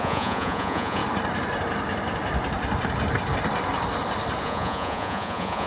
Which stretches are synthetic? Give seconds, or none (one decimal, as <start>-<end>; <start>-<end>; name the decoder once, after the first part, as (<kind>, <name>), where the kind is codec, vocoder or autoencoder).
0.0-1.0 (vocoder, Vocos); 4.4-5.7

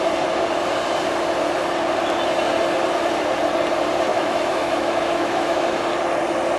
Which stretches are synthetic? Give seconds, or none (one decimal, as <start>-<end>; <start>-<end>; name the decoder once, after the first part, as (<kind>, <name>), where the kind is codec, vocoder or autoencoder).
4.1-5.8 (autoencoder, DAC-VAE)

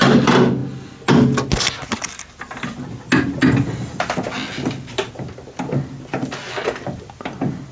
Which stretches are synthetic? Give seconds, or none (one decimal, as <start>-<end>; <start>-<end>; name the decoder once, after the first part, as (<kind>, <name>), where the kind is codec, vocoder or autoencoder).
none

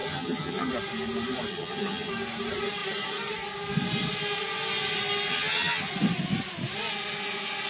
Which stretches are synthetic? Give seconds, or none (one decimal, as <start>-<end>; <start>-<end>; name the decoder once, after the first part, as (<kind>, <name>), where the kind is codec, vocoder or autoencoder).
0.0-0.7 (vocoder, HiFi-GAN); 1.5-2.1; 5.3-5.9

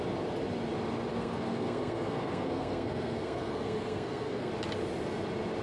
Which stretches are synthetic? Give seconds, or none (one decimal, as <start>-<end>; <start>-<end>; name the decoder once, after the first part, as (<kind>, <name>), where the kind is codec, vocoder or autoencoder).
1.1-4.5 (codec, SNAC)

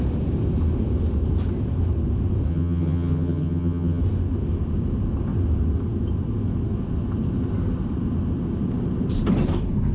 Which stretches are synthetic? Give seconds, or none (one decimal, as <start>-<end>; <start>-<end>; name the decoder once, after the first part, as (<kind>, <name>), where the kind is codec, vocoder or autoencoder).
2.5-4.0 (vocoder, HiFi-GAN)